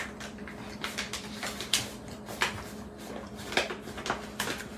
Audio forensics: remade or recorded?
recorded